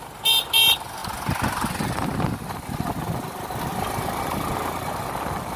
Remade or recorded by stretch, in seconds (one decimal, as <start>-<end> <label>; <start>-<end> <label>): 0.0-5.6 recorded